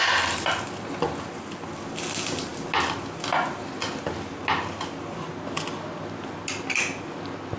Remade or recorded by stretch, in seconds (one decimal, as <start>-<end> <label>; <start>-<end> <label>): 0.0-7.6 recorded